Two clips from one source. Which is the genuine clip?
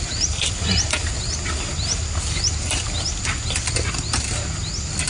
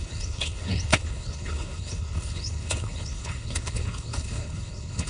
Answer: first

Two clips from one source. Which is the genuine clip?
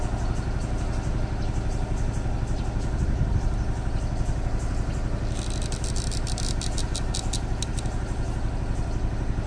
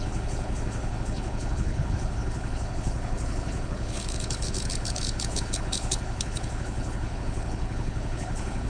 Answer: first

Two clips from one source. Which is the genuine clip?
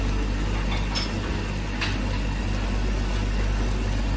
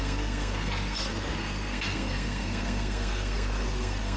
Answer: first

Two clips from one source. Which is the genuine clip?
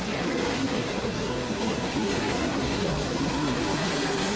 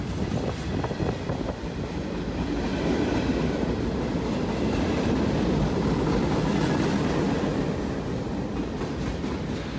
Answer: second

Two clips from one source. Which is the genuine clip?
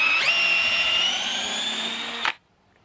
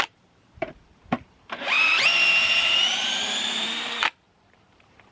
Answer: first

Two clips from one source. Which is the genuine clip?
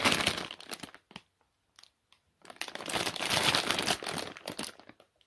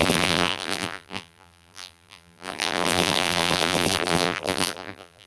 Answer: first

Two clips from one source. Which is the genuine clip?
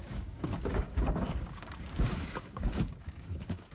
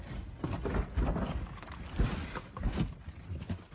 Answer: second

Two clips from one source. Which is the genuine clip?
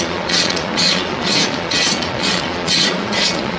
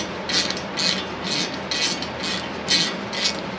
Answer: second